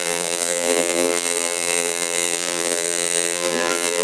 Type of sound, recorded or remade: remade